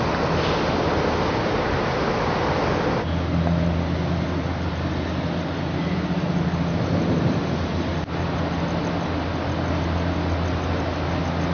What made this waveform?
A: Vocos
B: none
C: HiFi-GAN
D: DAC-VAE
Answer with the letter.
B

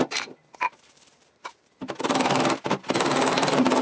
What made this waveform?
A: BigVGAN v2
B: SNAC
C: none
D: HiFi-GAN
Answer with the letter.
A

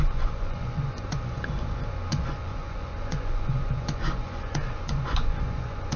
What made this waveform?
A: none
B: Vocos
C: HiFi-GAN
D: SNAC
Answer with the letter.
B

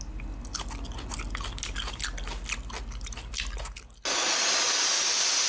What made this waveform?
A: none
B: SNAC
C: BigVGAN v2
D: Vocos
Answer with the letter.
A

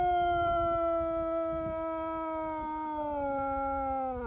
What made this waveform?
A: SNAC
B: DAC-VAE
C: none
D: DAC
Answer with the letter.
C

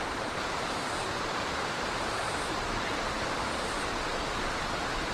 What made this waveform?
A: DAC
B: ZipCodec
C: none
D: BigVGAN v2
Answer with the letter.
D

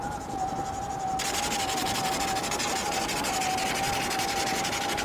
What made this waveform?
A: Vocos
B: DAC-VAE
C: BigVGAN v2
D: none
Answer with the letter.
D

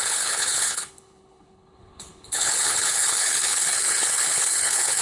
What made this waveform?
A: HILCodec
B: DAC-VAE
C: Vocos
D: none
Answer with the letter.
A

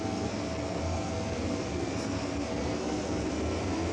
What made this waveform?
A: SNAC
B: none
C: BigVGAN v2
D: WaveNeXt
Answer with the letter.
A